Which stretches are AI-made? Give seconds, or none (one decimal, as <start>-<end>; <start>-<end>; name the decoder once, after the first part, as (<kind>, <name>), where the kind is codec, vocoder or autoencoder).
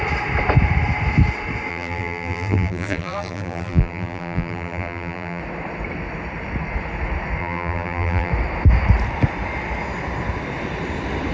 1.7-5.4 (vocoder, BigVGAN v2); 7.4-8.3